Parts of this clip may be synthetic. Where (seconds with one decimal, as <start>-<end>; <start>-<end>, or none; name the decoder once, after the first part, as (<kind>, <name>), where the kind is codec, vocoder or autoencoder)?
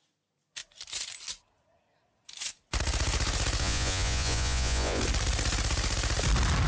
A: 3.6-5.0 (vocoder, Vocos)